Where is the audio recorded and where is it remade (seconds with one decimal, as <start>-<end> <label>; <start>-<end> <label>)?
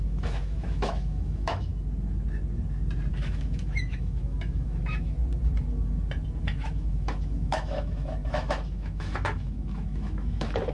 0.0-1.7 remade; 1.7-3.1 recorded; 3.1-5.2 remade; 5.2-6.4 recorded; 6.4-10.7 remade